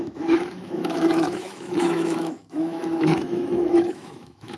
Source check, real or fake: fake